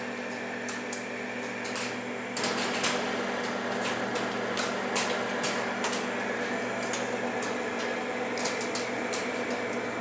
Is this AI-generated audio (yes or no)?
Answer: no